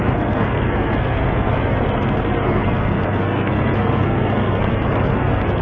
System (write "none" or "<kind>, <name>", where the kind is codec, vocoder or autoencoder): codec, SNAC